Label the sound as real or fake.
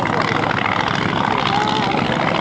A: real